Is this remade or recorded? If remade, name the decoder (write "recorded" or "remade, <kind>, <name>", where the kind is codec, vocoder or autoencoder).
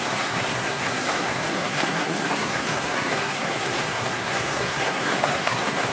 remade, codec, SNAC